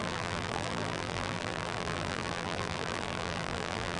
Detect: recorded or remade remade